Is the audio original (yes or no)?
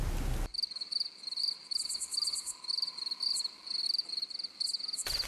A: yes